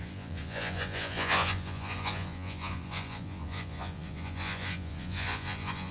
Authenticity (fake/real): fake